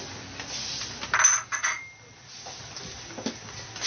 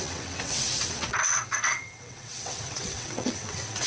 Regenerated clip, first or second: second